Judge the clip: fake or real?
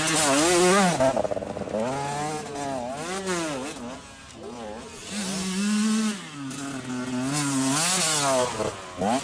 real